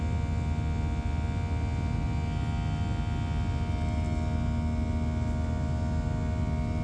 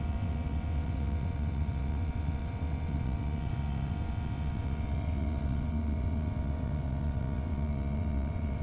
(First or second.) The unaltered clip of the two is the first